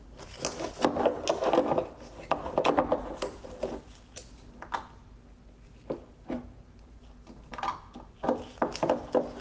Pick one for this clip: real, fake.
real